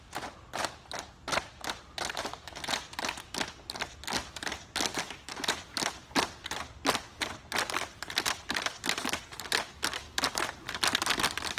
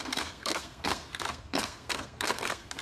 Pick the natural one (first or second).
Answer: first